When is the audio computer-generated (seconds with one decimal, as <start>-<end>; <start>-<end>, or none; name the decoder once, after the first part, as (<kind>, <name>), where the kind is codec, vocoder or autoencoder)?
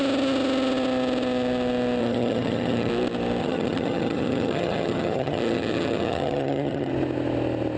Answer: 2.0-2.9 (vocoder, HiFi-GAN); 3.4-6.9